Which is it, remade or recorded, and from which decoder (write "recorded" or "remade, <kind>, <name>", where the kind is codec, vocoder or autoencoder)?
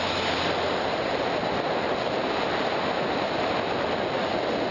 recorded